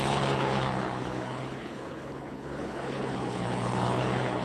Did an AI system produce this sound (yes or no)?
yes